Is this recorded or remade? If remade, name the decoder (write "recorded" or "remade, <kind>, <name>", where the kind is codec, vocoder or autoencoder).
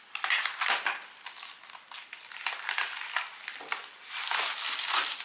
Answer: recorded